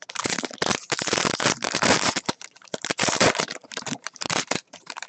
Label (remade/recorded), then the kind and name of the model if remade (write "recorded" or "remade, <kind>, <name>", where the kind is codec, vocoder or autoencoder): remade, vocoder, BigVGAN v2